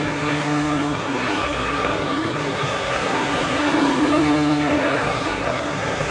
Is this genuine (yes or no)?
no